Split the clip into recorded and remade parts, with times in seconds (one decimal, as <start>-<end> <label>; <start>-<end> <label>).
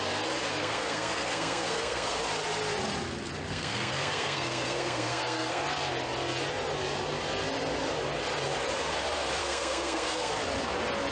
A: 0.0-0.6 recorded; 0.6-2.2 remade; 2.2-3.5 recorded; 3.5-5.6 remade; 5.6-9.4 recorded; 9.4-10.3 remade; 10.3-11.1 recorded